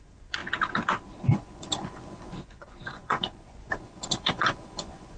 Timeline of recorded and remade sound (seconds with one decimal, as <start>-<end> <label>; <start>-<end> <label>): 0.0-0.4 remade; 0.4-1.3 recorded; 1.3-5.2 remade